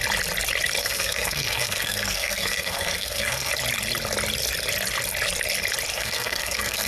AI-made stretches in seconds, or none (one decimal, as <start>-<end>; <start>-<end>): 0.8-3.5; 5.9-6.9